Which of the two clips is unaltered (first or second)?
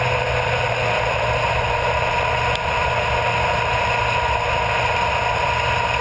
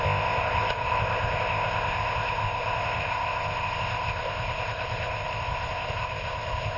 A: first